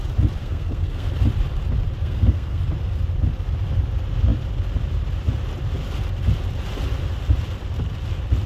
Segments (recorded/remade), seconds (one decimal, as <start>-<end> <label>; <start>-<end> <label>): 0.0-0.4 recorded; 0.4-1.1 remade; 1.1-2.0 recorded; 2.0-2.6 remade; 2.6-8.5 recorded